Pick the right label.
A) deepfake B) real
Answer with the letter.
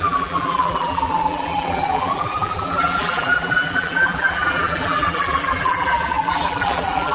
A